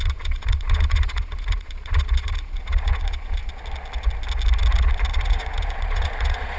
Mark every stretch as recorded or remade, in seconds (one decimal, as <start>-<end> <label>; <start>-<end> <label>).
0.0-3.4 remade; 3.4-5.1 recorded; 5.1-6.6 remade